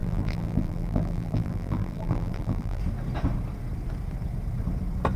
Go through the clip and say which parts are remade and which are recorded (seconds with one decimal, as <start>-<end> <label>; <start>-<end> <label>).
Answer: 0.0-2.8 remade; 2.8-5.2 recorded

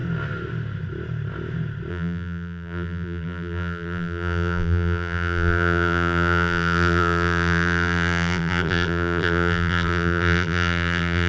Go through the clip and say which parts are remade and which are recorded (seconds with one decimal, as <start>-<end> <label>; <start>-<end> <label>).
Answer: 0.0-1.9 recorded; 1.9-11.3 remade

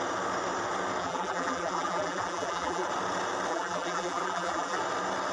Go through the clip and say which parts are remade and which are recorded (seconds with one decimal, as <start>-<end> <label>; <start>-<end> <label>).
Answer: 0.0-1.0 recorded; 1.0-2.9 remade; 2.9-3.5 recorded; 3.5-4.8 remade; 4.8-5.3 recorded